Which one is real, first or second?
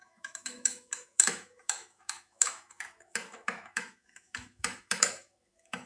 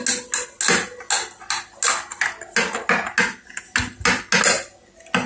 second